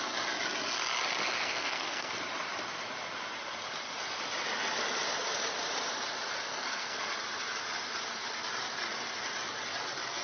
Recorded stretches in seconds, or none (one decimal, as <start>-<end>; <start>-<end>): 0.0-1.4; 2.1-6.5; 7.1-10.2